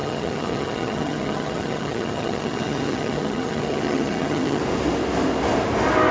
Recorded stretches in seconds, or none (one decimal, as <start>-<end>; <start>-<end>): 4.6-6.1